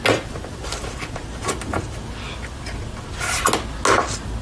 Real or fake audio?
real